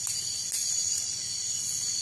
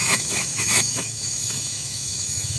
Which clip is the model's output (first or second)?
second